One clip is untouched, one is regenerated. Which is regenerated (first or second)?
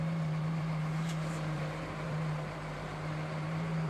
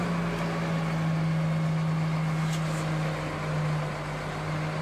first